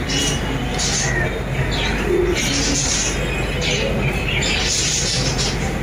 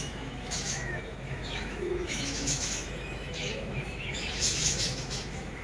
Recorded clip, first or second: first